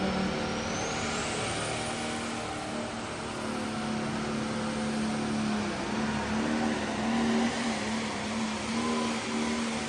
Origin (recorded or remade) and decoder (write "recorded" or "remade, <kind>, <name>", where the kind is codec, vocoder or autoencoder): recorded